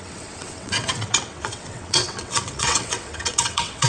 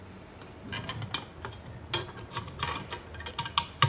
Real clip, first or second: second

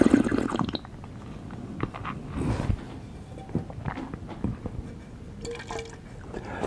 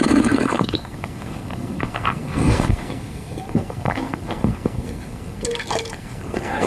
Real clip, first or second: first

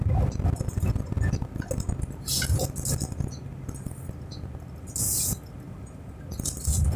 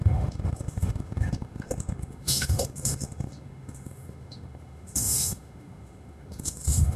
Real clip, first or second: first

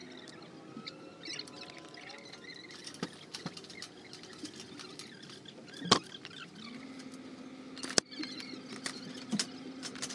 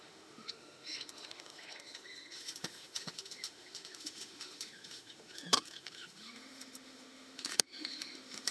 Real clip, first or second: first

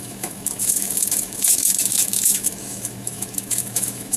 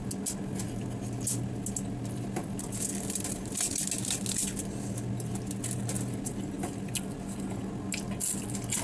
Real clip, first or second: second